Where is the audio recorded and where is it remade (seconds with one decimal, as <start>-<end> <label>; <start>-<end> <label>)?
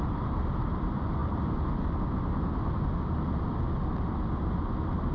0.0-5.1 recorded